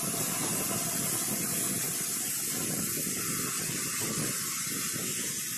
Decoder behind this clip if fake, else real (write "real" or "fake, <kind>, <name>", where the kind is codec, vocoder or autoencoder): real